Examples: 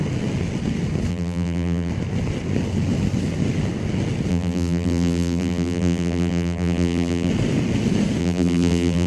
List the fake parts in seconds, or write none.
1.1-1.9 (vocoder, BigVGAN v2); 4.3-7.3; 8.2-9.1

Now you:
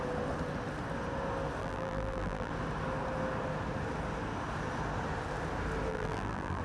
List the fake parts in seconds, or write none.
1.6-2.5 (vocoder, BigVGAN v2); 5.9-6.6

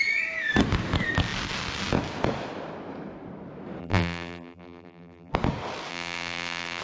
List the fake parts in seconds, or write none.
3.8-5.3 (vocoder, BigVGAN v2); 5.9-6.8

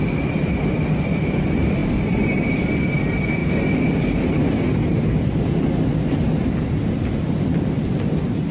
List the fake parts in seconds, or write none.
0.0-3.4 (vocoder, BigVGAN v2); 7.9-8.5

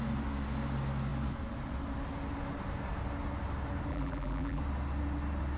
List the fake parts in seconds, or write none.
3.9-4.6 (vocoder, BigVGAN v2)